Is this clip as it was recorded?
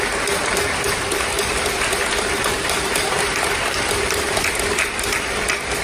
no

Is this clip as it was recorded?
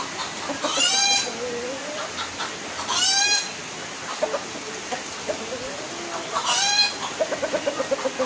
yes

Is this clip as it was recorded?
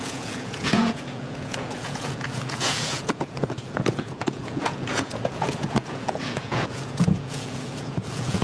no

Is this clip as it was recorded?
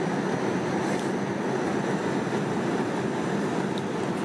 yes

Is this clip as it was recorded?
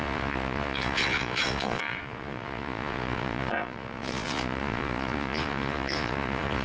no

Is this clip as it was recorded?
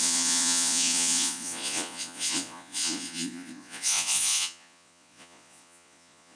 no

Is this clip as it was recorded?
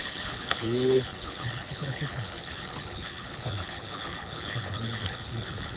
no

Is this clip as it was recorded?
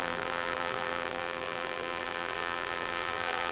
no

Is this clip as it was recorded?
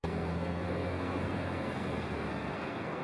no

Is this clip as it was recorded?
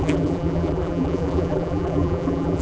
no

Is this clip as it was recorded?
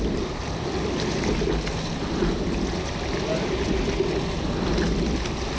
yes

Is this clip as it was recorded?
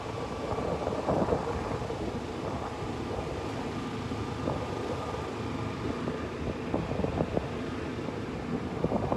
yes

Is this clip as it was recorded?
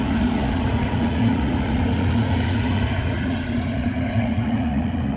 no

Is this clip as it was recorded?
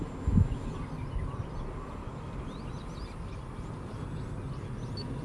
yes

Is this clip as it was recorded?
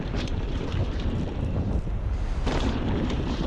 no